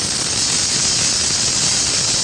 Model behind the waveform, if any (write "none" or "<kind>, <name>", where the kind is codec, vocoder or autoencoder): none